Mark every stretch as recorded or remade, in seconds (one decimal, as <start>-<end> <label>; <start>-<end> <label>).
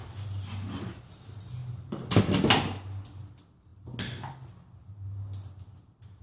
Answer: 0.0-6.2 recorded